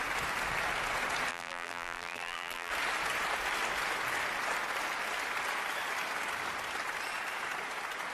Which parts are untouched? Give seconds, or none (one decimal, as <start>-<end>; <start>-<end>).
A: 0.0-1.3; 2.7-8.1